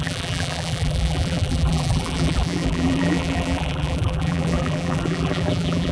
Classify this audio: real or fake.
fake